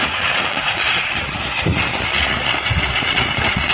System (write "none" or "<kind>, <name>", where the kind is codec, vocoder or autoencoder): vocoder, Vocos